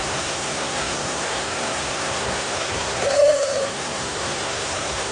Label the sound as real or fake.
fake